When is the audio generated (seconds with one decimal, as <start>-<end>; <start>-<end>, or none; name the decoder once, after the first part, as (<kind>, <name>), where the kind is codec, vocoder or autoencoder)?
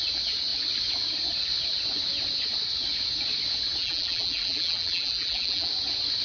3.8-5.7 (vocoder, BigVGAN v2)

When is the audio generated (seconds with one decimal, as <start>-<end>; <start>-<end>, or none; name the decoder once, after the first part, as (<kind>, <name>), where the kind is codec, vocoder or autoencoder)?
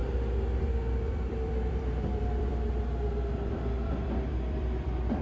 0.6-2.5 (vocoder, BigVGAN v2); 3.5-5.2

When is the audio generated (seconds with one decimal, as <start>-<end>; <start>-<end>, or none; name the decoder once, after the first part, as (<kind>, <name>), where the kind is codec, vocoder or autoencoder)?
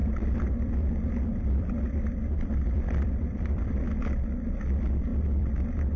0.0-3.6 (vocoder, BigVGAN v2); 5.1-6.0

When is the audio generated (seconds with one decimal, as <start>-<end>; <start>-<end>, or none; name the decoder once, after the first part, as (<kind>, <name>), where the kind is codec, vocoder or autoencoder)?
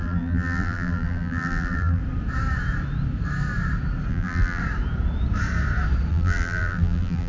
0.0-2.0 (vocoder, BigVGAN v2); 4.1-4.6; 6.1-7.3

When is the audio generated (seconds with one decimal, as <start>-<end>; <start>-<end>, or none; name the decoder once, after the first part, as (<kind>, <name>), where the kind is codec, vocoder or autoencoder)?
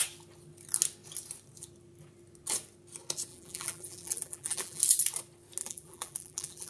3.3-4.8 (vocoder, BigVGAN v2); 5.6-6.7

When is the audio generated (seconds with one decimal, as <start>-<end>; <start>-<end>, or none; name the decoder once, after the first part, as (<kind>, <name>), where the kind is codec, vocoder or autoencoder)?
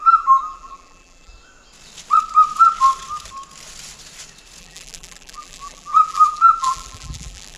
0.0-1.3 (vocoder, BigVGAN v2); 4.6-7.6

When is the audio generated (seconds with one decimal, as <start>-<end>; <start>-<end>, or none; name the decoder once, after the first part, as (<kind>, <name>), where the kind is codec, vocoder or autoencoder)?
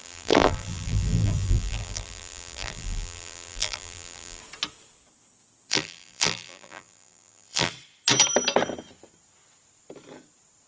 0.0-4.4 (vocoder, BigVGAN v2); 5.7-7.7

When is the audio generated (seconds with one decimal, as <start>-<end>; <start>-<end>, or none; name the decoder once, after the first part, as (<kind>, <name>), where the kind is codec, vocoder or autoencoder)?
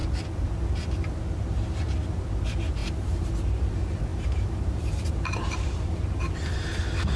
2.8-3.5 (vocoder, BigVGAN v2); 4.1-6.3